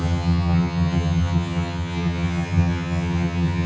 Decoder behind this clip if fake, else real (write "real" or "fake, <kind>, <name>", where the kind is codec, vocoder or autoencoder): fake, vocoder, HiFi-GAN